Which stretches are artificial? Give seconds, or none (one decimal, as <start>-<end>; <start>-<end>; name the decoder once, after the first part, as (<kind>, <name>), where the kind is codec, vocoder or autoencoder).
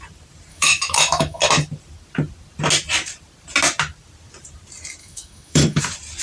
0.5-1.5 (autoencoder, DAC-VAE); 5.0-5.8